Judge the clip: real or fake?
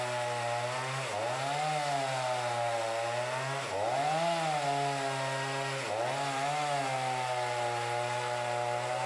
real